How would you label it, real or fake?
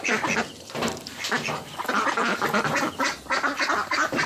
real